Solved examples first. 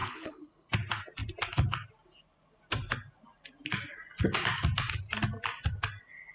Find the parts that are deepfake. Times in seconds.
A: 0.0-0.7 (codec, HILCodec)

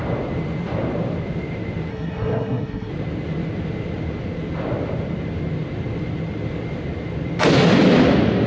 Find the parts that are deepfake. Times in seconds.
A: 1.9-2.9 (codec, SNAC)